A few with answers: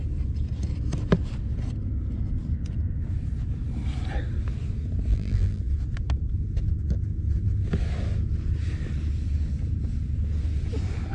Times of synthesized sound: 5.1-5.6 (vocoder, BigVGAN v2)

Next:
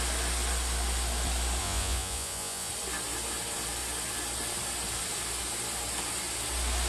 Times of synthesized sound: 1.6-2.7 (vocoder, Vocos)